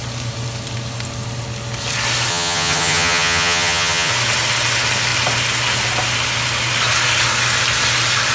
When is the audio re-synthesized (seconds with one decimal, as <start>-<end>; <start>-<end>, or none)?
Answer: 2.3-4.1